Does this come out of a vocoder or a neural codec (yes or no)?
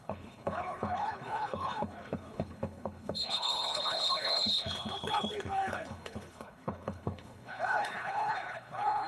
yes